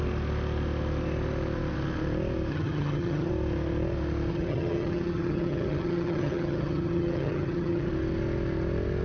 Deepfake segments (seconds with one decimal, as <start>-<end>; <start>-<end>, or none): 2.5-3.3; 4.3-7.9